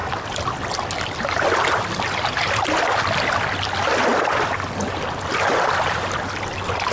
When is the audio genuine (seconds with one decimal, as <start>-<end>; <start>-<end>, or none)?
0.0-6.9